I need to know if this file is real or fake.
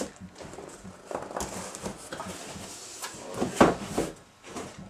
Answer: real